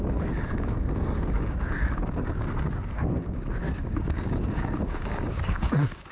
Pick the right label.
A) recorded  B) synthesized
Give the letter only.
B